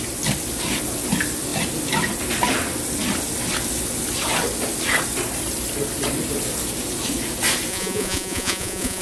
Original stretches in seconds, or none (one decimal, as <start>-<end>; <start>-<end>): 0.0-7.7